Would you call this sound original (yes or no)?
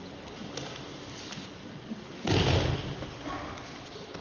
yes